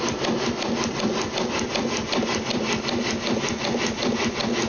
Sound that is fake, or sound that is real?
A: real